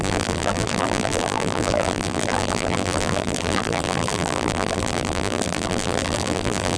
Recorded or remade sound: remade